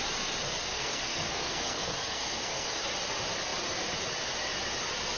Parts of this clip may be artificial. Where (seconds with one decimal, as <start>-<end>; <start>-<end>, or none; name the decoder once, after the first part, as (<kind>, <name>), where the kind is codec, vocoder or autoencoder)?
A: 0.7-2.8 (codec, SNAC)